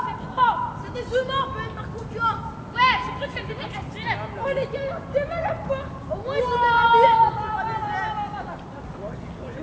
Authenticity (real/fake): real